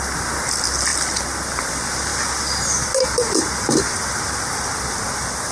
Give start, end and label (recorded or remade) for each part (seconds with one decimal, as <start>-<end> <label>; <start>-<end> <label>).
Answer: 0.0-5.5 recorded